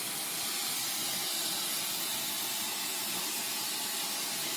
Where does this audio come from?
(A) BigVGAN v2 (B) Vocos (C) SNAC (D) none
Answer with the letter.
D